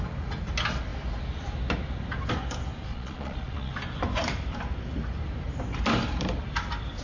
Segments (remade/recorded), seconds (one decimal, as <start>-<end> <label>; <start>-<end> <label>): 0.0-2.9 recorded; 2.9-3.7 remade; 3.7-7.0 recorded